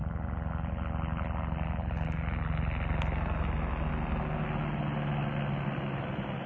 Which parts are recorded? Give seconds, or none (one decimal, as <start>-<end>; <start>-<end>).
0.0-6.5